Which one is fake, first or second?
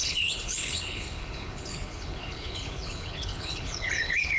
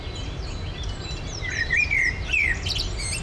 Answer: first